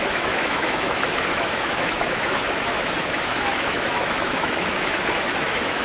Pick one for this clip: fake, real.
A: fake